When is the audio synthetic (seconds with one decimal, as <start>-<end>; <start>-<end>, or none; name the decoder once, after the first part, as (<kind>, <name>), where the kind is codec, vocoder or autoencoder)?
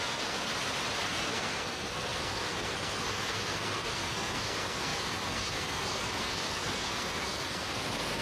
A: 0.0-0.5 (codec, SNAC); 1.0-8.2